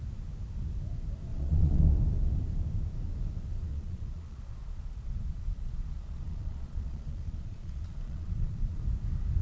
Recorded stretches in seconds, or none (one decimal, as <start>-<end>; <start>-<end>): 0.0-1.3; 1.8-3.7; 8.8-9.4

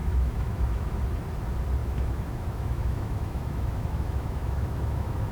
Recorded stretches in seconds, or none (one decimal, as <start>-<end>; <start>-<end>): 1.0-1.8

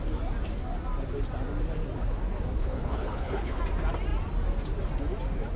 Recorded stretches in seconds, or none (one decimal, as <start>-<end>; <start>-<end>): 0.0-2.6; 3.6-5.6

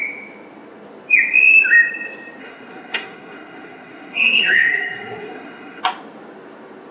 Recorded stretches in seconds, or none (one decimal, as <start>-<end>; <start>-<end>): 0.0-2.4; 5.8-6.9

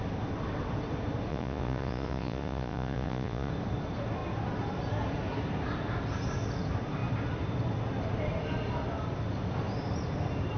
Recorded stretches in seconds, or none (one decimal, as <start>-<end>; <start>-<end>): 0.0-1.3; 3.5-10.6

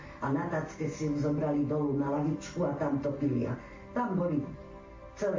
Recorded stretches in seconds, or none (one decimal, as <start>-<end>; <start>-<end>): 0.0-5.4

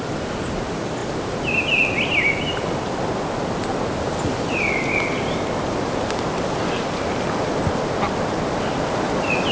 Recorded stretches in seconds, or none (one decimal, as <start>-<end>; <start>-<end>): 0.0-9.5